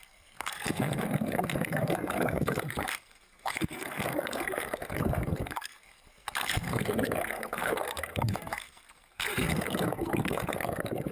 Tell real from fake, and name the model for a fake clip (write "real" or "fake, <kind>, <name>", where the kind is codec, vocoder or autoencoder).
fake, codec, SNAC